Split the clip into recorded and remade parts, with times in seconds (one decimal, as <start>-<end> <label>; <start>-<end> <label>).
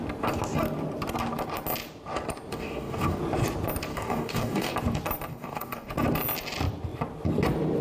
0.0-2.5 recorded; 2.5-3.2 remade; 3.2-3.9 recorded; 3.9-4.7 remade; 4.7-5.3 recorded; 5.3-5.9 remade; 5.9-7.8 recorded